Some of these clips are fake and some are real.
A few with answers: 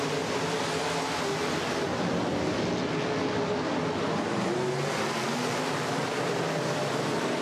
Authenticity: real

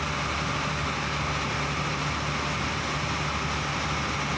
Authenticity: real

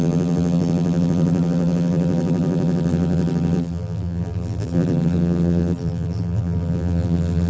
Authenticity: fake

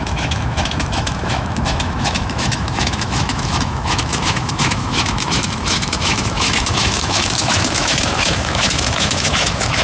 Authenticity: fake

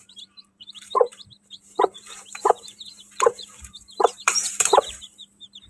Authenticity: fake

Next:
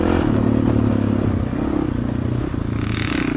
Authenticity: real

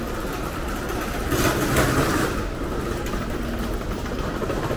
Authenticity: real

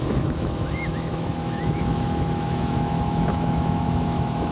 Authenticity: fake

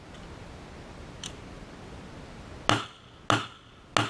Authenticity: real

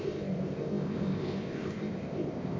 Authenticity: fake